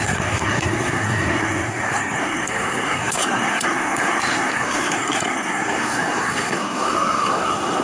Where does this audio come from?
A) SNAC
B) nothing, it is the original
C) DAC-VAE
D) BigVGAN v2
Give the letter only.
A